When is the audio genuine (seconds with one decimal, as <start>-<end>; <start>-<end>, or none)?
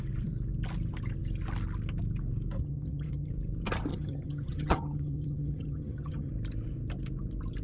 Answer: 0.0-2.6; 3.3-3.9; 6.3-7.6